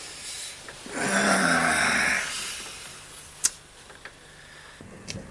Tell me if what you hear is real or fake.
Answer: real